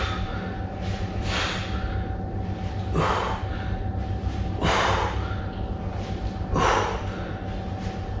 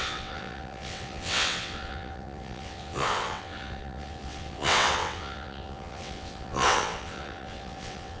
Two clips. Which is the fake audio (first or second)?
second